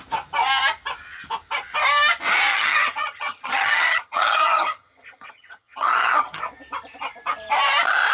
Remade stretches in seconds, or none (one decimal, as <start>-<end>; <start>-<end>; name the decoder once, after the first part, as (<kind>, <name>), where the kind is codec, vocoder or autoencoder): 2.5-6.4 (vocoder, HiFi-GAN)